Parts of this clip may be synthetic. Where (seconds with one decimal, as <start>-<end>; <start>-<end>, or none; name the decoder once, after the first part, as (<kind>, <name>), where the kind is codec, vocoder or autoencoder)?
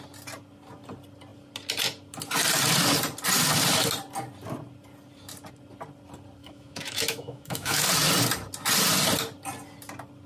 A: 6.4-7.9 (autoencoder, DAC-VAE)